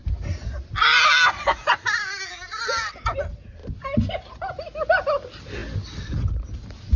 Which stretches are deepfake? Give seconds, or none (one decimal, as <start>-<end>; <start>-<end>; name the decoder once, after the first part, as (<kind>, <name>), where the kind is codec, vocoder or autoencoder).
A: none